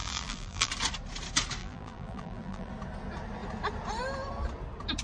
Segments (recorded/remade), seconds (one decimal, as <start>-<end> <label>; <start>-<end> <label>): 0.0-0.7 remade; 0.7-1.6 recorded; 1.6-2.7 remade; 2.7-5.0 recorded